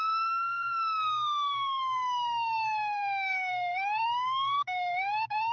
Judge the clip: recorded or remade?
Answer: remade